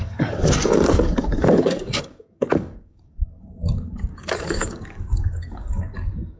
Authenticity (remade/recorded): remade